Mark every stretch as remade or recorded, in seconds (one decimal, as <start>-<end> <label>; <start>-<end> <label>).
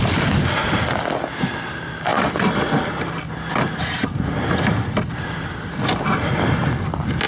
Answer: 0.0-7.3 recorded